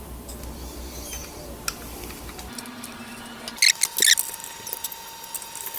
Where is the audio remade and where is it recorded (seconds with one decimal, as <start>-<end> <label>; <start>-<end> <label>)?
0.0-5.8 recorded